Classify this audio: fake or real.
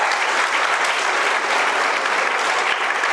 real